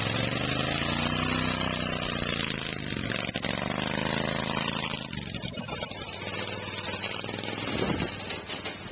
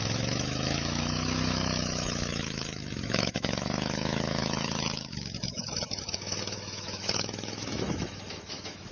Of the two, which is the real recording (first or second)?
first